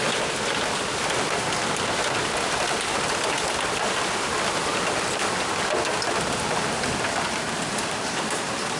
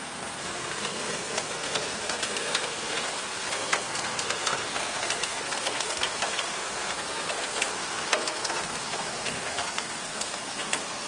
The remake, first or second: second